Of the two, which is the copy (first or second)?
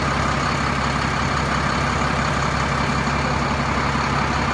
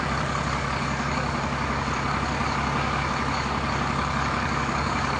second